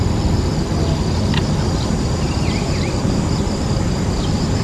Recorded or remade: recorded